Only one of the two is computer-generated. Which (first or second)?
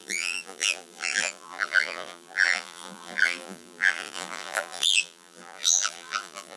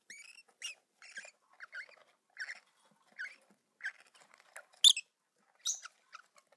first